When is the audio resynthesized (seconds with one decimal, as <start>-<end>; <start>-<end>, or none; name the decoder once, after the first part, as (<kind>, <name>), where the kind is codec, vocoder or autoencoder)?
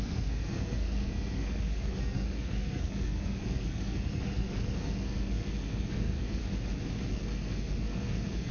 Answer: 0.0-6.4 (codec, SNAC); 7.1-8.5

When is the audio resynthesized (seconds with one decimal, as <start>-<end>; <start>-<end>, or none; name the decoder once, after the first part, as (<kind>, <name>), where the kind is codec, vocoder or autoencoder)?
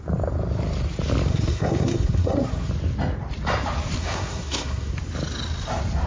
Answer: 1.3-2.7 (codec, SNAC); 4.0-4.9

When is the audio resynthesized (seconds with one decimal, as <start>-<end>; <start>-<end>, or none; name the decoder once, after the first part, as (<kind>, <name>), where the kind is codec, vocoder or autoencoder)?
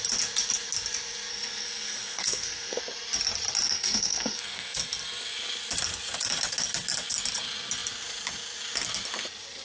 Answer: 1.3-2.8 (codec, SNAC); 3.7-4.8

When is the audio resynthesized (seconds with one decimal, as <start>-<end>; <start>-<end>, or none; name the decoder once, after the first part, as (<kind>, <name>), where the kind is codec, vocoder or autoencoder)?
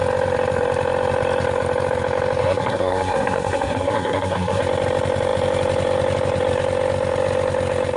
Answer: 2.4-4.6 (codec, SNAC)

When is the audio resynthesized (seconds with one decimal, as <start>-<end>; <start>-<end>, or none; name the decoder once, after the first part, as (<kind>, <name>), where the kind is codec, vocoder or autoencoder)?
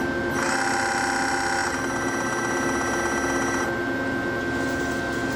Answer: none